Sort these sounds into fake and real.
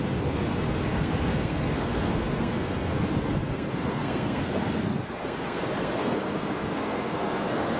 fake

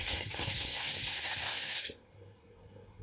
fake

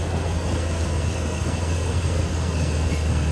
fake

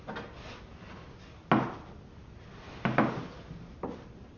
real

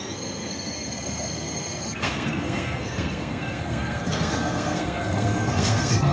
fake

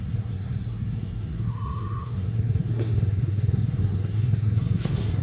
fake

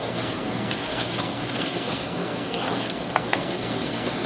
fake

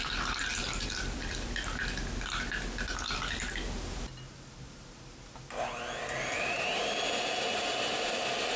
real